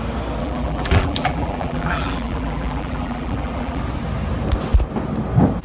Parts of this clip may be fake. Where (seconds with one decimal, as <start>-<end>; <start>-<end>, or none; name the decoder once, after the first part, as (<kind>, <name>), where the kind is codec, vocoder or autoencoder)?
0.4-3.8 (vocoder, BigVGAN v2)